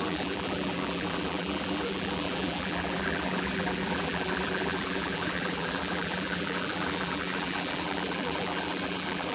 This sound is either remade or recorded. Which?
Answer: remade